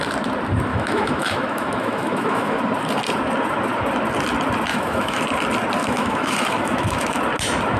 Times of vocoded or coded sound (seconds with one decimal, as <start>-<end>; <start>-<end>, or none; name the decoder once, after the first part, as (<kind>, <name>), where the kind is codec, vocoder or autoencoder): 0.7-2.6 (autoencoder, DAC-VAE); 4.7-5.2; 5.8-7.2